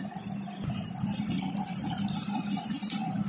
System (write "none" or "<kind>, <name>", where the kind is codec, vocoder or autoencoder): vocoder, BigVGAN v2